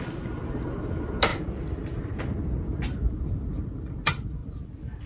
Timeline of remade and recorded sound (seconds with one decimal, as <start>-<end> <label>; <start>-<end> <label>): 0.0-1.3 recorded; 1.3-2.2 remade; 2.2-4.4 recorded; 4.4-5.1 remade